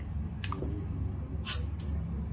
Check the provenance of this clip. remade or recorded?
recorded